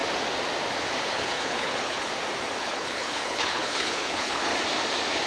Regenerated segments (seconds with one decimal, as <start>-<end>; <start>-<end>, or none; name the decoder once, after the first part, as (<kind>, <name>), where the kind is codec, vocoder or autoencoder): 1.0-2.1 (codec, HILCodec); 2.6-4.5